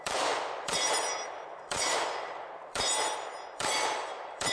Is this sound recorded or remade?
remade